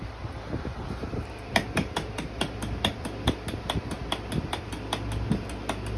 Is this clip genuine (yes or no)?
yes